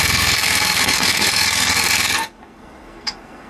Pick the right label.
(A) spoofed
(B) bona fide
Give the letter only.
A